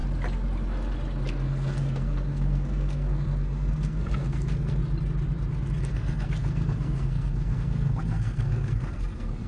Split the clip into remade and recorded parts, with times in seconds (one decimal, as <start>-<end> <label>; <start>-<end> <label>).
0.0-1.3 recorded; 1.3-4.8 remade; 4.8-5.8 recorded; 5.8-9.5 remade